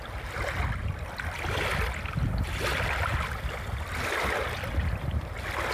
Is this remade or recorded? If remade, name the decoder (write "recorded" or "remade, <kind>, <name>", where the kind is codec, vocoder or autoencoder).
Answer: recorded